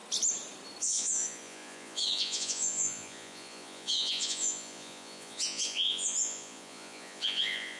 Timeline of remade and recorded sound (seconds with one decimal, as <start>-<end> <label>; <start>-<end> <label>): 0.0-0.8 recorded; 0.8-7.8 remade